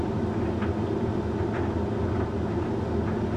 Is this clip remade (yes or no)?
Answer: no